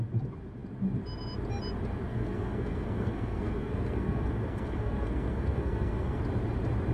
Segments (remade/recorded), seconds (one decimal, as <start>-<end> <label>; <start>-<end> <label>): 0.0-2.1 recorded; 2.1-6.2 remade; 6.2-6.9 recorded